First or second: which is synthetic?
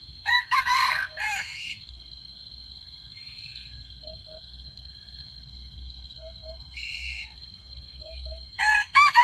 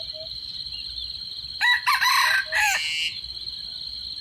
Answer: first